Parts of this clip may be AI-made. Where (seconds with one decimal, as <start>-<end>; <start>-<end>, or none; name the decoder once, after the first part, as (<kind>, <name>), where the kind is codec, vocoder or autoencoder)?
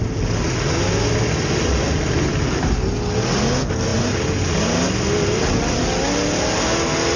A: none